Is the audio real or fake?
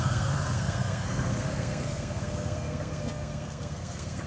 fake